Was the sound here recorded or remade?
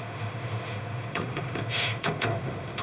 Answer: remade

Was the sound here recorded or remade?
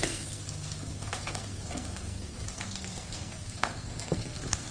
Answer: remade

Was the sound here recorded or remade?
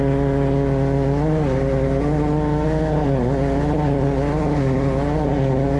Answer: recorded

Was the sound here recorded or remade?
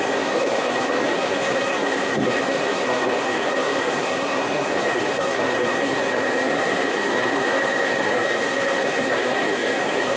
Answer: remade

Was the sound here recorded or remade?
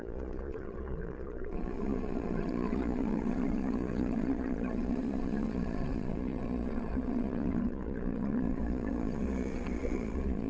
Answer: remade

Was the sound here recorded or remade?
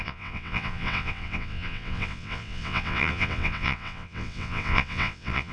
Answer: remade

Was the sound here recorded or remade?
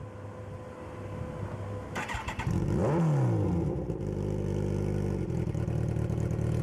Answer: recorded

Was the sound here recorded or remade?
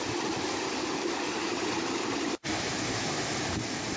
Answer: recorded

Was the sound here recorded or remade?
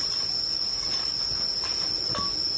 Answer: recorded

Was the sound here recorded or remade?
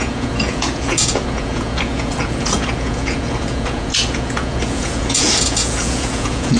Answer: remade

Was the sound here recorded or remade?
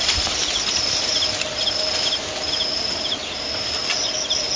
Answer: recorded